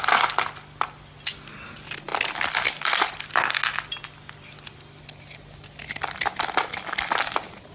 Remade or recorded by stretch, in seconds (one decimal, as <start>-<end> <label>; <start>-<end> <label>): 0.0-7.7 recorded